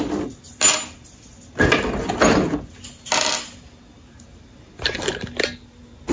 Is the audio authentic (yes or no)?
yes